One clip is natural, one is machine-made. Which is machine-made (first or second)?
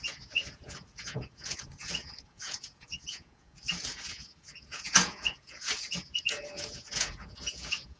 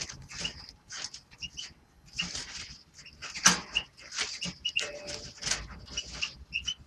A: first